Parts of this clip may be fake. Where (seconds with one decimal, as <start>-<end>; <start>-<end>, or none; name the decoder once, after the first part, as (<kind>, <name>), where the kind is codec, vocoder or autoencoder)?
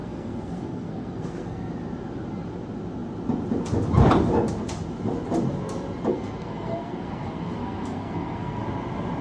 0.0-1.7 (codec, SNAC); 6.1-8.6